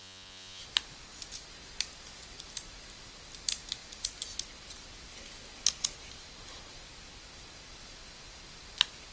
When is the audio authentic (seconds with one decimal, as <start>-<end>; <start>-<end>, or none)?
0.6-9.1